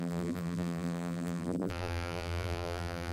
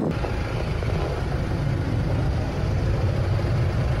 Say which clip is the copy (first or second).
first